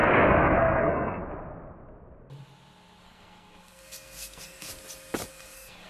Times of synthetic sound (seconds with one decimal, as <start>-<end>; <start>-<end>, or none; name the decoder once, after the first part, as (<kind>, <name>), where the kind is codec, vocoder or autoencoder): 0.0-1.2 (codec, SNAC); 3.0-4.7; 5.3-5.9